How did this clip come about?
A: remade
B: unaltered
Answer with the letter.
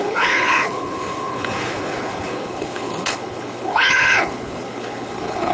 A